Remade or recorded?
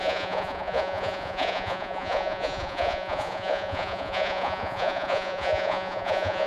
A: remade